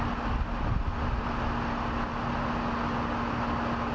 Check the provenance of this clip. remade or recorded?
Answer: recorded